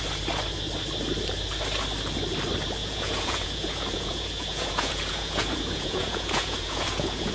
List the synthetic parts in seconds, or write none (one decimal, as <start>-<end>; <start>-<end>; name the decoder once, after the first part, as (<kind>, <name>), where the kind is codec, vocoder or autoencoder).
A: 2.8-7.3 (vocoder, Vocos)